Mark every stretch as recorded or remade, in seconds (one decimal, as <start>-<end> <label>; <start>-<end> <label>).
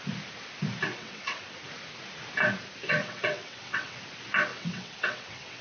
0.0-0.9 recorded; 0.9-1.6 remade; 1.6-3.0 recorded; 3.0-4.0 remade; 4.0-4.5 recorded; 4.5-5.6 remade